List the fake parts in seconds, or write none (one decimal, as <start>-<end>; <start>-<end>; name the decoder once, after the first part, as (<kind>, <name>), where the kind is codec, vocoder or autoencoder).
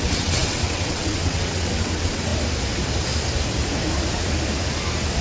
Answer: 0.0-2.3 (vocoder, WaveNeXt)